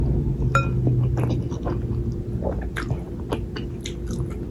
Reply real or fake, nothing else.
real